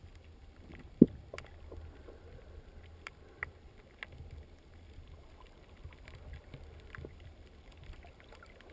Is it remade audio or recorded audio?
recorded